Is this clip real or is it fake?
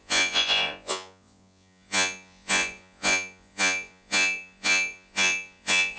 fake